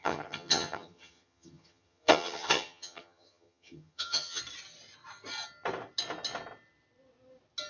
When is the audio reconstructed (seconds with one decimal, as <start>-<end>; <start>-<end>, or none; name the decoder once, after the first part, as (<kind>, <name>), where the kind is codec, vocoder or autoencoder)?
0.0-4.4 (vocoder, HiFi-GAN)